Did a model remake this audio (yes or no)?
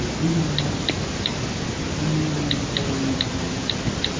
no